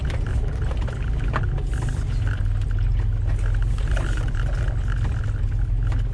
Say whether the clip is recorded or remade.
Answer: recorded